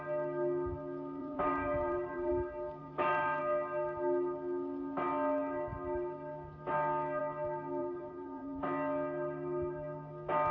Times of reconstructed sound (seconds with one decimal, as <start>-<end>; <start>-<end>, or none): 1.2-2.3; 2.8-3.4; 7.8-8.6